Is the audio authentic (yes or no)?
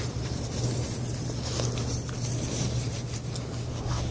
yes